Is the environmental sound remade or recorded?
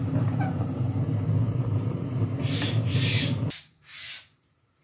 remade